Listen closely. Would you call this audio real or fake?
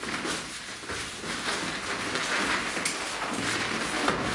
real